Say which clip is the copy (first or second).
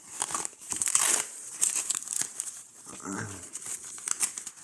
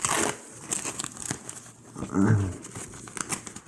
first